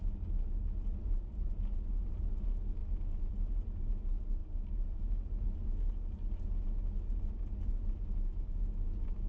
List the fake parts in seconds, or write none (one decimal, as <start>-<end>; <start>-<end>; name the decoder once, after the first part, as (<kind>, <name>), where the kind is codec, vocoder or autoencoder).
none